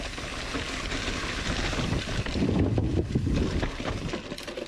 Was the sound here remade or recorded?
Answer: recorded